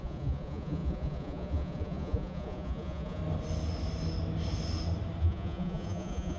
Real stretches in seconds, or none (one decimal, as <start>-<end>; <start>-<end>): 3.2-5.2